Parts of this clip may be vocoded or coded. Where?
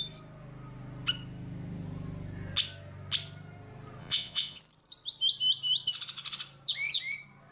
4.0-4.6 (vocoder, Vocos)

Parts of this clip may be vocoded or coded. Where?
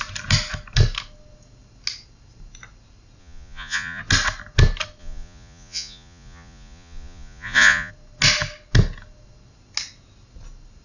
3.2-4.0 (vocoder, Vocos); 5.0-7.9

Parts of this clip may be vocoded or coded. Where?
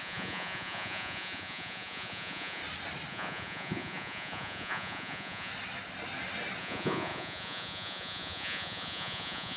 0.0-2.6 (vocoder, Vocos); 3.1-5.5; 6.6-9.6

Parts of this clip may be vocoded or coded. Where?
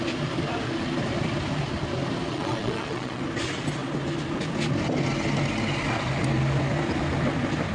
2.3-3.2 (vocoder, Vocos)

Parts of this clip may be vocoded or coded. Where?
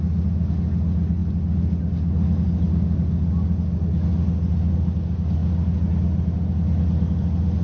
none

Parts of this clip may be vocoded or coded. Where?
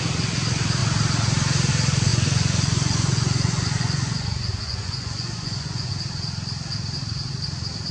2.1-5.9 (vocoder, Vocos)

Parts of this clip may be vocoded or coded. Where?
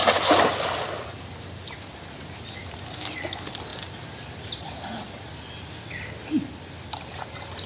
none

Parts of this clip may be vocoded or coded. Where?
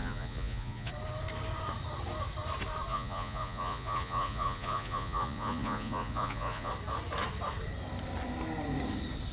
0.0-0.9 (vocoder, Vocos); 2.9-6.7